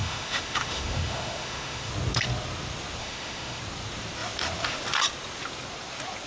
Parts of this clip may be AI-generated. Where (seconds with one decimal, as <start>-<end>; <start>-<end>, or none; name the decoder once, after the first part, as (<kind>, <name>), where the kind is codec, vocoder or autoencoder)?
0.0-1.9 (autoencoder, DAC-VAE); 3.0-3.6